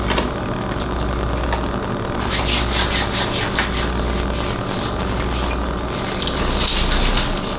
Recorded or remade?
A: recorded